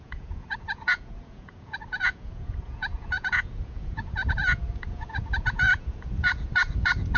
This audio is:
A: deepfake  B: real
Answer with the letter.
A